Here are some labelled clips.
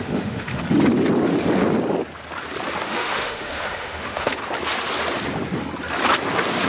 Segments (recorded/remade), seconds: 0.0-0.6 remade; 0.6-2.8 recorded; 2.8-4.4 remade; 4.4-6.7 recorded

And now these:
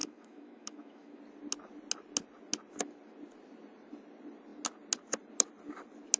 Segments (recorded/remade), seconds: 0.0-1.2 remade; 1.2-6.2 recorded

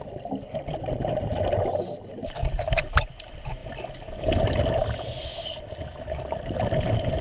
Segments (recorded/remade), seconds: 0.0-7.2 recorded

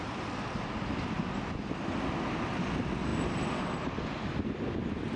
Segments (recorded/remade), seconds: 0.0-5.2 recorded